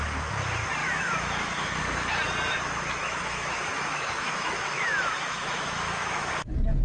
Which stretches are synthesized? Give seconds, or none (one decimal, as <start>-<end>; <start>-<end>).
0.8-1.8; 3.0-6.3